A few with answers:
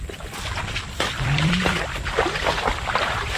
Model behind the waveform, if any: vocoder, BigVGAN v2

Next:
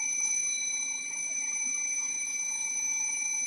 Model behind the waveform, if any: vocoder, BigVGAN v2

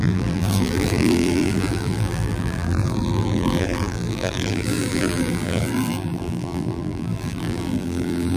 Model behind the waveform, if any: vocoder, BigVGAN v2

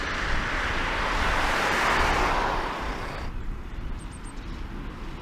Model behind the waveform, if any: vocoder, BigVGAN v2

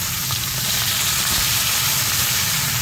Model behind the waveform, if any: vocoder, BigVGAN v2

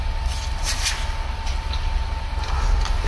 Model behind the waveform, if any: none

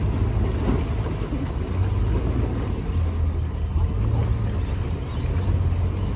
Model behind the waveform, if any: none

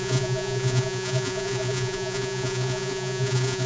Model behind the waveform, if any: vocoder, Vocos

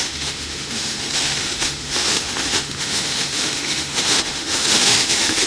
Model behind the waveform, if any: autoencoder, DAC-VAE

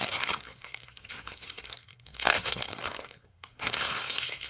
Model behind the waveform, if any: codec, SNAC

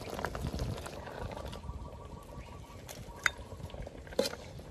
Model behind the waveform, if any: none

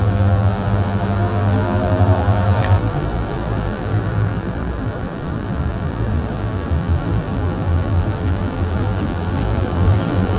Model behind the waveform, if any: vocoder, BigVGAN v2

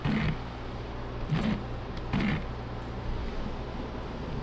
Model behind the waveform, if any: none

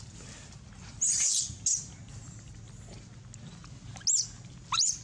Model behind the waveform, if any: none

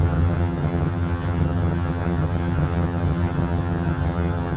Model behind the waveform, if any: vocoder, HiFi-GAN